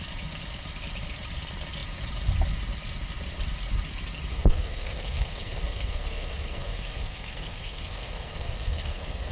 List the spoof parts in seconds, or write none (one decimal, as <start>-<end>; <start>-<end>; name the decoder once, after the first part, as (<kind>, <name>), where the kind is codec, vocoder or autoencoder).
4.3-9.3 (codec, SNAC)